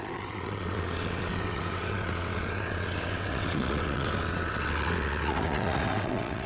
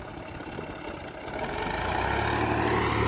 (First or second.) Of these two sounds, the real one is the second